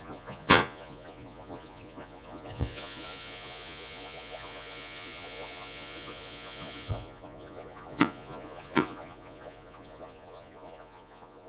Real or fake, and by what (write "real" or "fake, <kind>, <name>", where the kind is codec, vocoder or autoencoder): fake, vocoder, Vocos